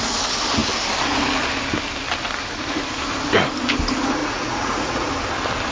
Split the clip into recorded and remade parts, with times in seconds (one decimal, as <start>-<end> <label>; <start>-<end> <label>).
0.0-4.2 recorded; 4.2-5.1 remade; 5.1-5.7 recorded